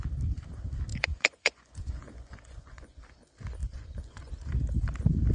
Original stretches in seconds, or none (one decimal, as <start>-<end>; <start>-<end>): 0.0-0.9; 3.0-3.6; 4.3-5.3